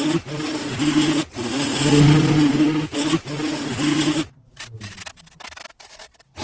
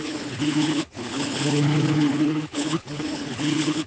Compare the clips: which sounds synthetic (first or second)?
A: second